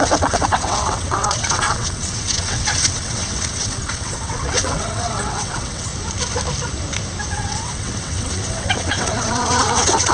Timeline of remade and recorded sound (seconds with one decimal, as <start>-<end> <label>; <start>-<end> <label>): 0.0-5.9 remade; 5.9-7.3 recorded; 7.3-10.1 remade